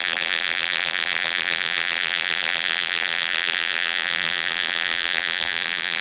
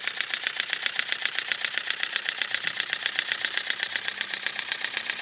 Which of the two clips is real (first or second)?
second